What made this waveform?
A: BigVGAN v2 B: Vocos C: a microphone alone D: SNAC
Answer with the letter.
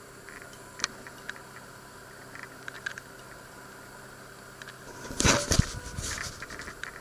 C